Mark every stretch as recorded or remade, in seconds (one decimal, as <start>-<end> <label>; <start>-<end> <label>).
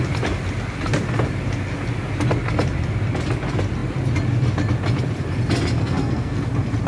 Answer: 0.0-5.8 recorded; 5.8-6.5 remade; 6.5-6.9 recorded